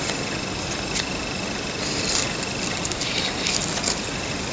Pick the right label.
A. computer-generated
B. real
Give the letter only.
B